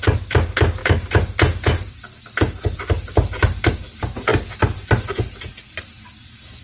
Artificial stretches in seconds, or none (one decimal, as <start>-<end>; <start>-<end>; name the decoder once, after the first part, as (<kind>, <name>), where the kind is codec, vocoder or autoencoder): none